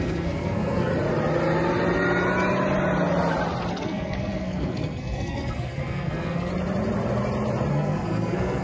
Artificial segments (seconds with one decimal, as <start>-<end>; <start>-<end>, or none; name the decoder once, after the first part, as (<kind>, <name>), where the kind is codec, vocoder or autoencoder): 0.0-0.9 (codec, SNAC); 3.7-6.5; 7.7-8.6